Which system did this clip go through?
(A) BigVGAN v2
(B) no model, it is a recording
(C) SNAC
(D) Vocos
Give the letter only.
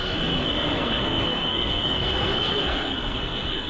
C